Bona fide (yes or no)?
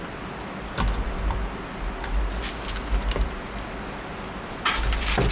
yes